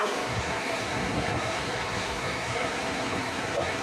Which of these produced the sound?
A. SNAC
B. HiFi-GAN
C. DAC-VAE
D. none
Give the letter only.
A